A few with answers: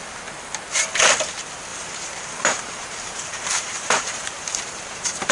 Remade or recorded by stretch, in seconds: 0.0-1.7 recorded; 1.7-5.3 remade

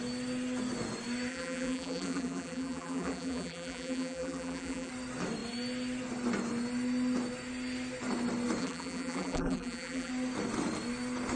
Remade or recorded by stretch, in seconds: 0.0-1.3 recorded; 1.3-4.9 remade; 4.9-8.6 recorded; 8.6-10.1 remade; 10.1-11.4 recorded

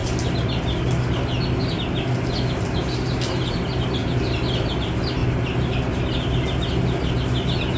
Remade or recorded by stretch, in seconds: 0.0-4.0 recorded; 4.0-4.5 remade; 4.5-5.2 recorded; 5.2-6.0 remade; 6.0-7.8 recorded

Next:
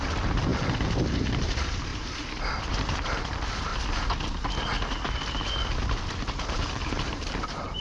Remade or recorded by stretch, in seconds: 0.0-0.5 remade; 0.5-1.3 recorded; 1.3-3.7 remade; 3.7-6.0 recorded; 6.0-7.8 remade